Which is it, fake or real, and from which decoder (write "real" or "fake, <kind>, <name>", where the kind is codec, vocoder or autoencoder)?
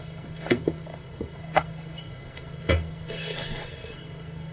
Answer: fake, codec, SNAC